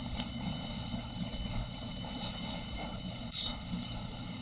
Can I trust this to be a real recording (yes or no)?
no